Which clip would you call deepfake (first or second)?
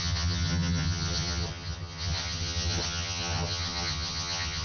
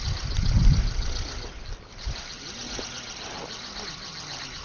first